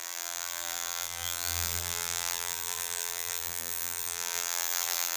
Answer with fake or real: fake